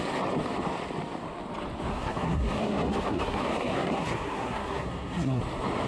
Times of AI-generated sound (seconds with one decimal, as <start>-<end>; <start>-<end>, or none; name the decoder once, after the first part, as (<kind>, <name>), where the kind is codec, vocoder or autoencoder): 1.9-5.4 (codec, SNAC)